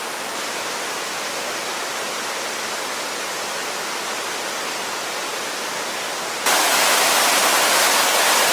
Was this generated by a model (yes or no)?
no